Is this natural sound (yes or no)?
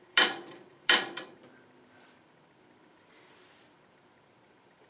no